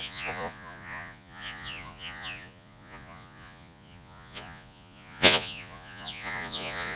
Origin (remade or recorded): remade